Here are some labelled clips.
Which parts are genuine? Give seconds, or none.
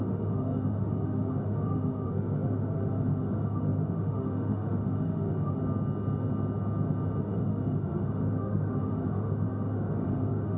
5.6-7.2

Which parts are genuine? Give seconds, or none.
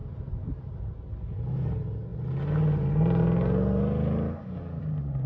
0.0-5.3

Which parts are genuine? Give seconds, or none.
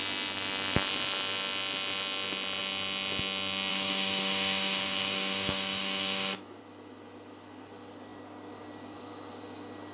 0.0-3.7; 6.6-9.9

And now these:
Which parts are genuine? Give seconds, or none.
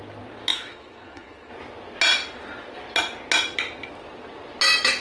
0.0-0.5; 1.5-5.0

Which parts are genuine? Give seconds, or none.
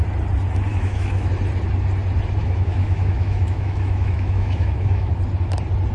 0.0-0.7; 1.3-2.4; 5.1-5.9